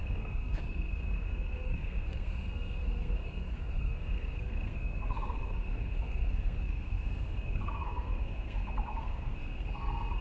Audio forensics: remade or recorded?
remade